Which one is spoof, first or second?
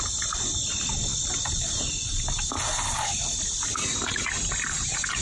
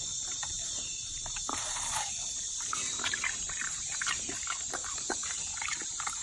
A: second